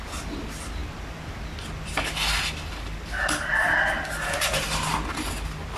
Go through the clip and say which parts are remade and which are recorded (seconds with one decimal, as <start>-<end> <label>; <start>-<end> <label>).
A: 0.0-5.8 recorded